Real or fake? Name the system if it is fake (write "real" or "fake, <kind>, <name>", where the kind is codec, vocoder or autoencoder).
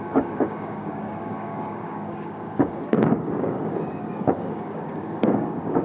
fake, codec, DAC